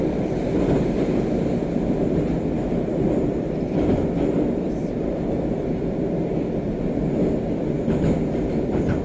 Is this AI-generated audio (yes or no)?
no